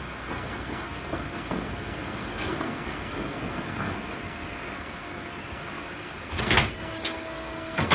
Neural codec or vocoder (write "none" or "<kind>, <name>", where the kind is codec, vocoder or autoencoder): codec, SNAC